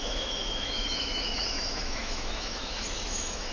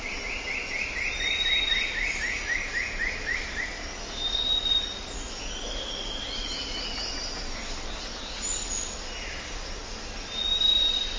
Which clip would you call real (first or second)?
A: second